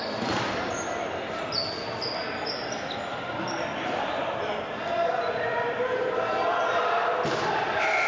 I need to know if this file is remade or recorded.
remade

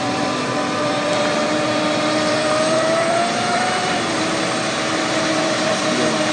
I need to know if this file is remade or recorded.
remade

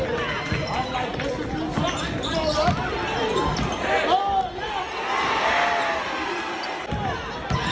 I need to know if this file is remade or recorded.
recorded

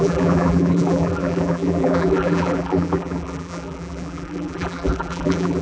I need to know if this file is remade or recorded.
remade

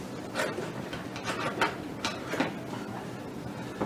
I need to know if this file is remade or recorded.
recorded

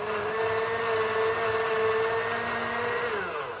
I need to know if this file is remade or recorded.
recorded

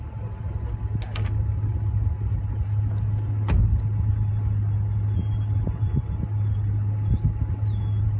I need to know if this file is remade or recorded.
recorded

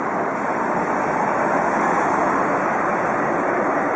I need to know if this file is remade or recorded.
recorded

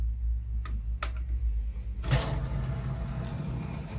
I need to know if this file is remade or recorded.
recorded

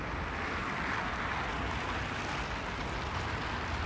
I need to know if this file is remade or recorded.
recorded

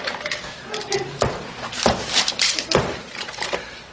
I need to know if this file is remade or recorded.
recorded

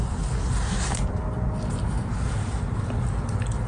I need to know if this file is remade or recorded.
recorded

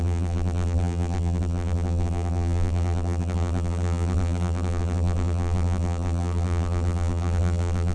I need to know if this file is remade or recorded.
remade